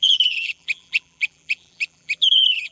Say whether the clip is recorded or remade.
remade